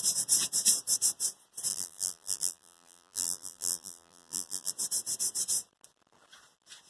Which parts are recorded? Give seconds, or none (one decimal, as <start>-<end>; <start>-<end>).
0.0-1.7; 4.7-6.9